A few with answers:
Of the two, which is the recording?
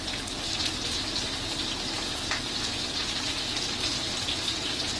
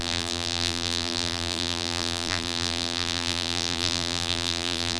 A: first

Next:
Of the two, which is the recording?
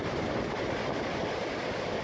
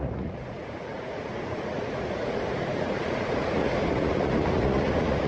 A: first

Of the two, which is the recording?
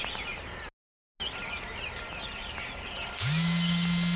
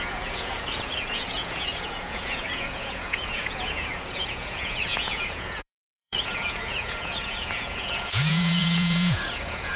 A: first